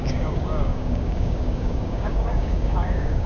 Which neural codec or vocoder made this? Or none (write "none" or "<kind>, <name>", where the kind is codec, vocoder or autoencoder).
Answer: codec, DAC